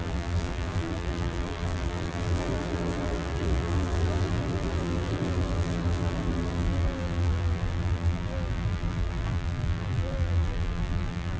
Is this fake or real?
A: fake